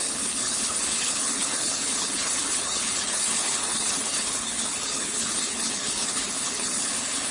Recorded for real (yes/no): no